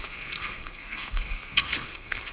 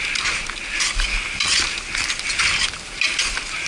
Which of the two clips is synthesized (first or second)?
first